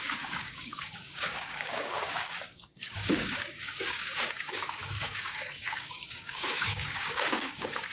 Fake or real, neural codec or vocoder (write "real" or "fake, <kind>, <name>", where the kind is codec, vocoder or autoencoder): fake, codec, DAC